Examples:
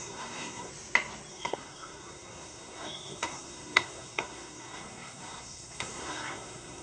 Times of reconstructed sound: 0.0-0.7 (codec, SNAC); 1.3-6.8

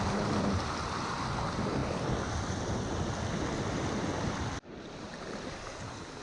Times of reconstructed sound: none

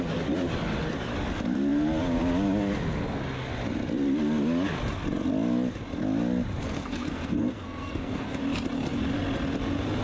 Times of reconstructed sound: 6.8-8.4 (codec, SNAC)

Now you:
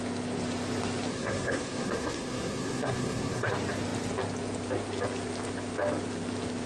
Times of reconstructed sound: 1.1-3.5 (codec, SNAC)

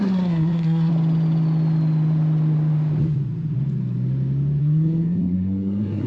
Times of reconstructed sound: 0.0-0.9 (codec, SNAC); 4.6-6.1